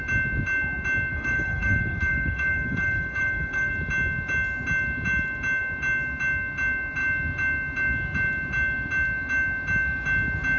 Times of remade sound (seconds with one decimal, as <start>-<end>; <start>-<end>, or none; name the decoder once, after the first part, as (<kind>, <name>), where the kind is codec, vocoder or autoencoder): 1.1-3.7 (codec, DAC)